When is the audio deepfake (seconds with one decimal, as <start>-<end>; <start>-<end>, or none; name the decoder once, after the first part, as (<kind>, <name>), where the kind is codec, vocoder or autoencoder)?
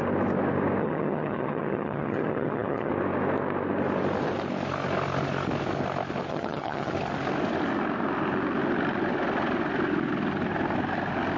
0.8-2.9 (vocoder, HiFi-GAN); 6.3-6.9